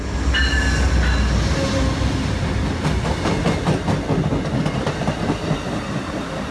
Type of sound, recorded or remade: recorded